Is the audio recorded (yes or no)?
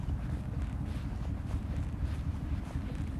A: yes